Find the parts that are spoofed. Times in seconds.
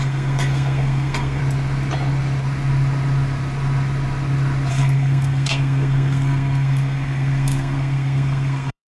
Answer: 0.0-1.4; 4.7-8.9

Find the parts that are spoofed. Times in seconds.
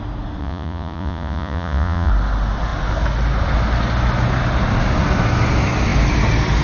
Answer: 0.4-2.1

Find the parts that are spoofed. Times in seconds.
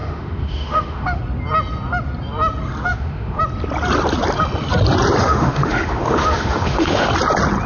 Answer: 0.0-1.2; 2.9-3.4; 5.2-7.1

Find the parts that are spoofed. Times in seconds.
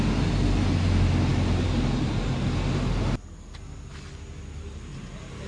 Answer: none